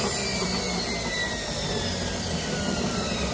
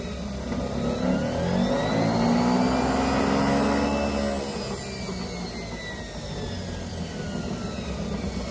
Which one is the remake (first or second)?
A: first